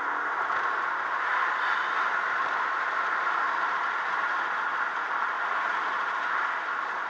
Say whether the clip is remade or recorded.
recorded